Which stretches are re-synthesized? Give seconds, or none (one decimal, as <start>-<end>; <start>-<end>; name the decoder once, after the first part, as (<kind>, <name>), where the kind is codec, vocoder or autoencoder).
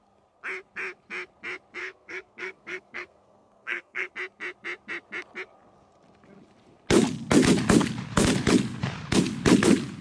1.8-4.1 (codec, SNAC)